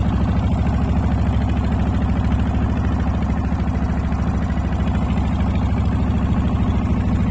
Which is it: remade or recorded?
recorded